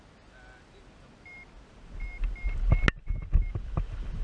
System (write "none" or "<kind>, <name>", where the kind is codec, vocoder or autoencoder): none